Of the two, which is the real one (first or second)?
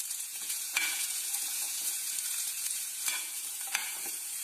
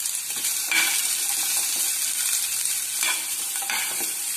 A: second